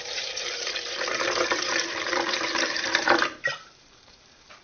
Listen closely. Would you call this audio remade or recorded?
remade